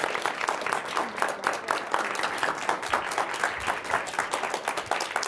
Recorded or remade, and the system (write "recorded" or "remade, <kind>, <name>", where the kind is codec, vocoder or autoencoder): recorded